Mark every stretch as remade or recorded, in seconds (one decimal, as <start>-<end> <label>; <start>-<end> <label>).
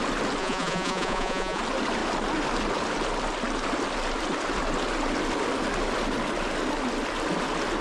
0.0-0.4 recorded; 0.4-1.6 remade; 1.6-7.8 recorded